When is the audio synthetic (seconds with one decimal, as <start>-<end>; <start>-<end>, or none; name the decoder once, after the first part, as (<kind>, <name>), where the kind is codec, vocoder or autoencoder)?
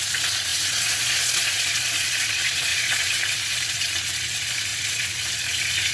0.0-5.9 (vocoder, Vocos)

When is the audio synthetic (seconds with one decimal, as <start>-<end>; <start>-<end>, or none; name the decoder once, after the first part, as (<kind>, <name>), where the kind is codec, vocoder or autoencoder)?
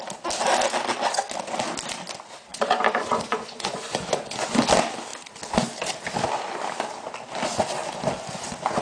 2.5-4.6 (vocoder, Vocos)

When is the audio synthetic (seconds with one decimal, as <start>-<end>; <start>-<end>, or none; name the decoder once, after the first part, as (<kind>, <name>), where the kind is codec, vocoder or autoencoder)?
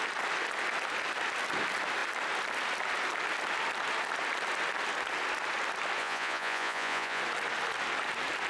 6.0-7.2 (vocoder, Vocos)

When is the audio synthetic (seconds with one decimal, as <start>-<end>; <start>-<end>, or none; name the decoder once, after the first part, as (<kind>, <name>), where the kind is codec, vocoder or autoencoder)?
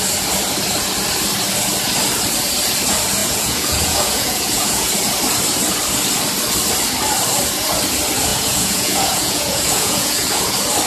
3.2-4.9 (vocoder, Vocos); 8.3-10.5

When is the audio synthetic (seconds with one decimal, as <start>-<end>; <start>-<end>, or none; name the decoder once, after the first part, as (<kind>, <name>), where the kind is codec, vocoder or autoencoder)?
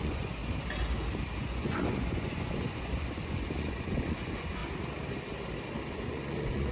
0.0-0.4 (vocoder, Vocos); 1.4-4.6; 5.9-6.7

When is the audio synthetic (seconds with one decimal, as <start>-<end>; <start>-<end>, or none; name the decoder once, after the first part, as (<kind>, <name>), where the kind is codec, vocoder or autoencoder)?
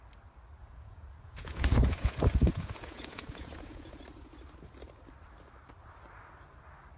0.6-4.0 (vocoder, Vocos)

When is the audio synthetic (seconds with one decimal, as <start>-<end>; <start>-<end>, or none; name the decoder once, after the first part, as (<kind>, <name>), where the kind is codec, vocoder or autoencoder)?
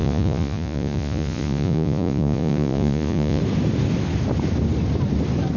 0.0-3.4 (vocoder, Vocos)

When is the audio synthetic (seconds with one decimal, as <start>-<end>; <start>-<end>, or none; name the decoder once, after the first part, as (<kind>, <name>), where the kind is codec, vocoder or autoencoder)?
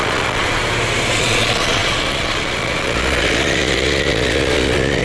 0.0-0.6 (vocoder, Vocos); 1.1-5.0